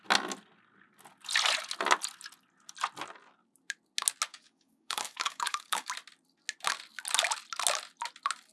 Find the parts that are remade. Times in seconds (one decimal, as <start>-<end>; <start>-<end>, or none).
4.3-5.9